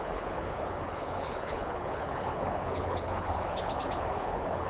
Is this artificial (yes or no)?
yes